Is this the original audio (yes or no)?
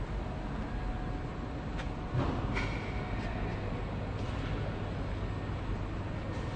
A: yes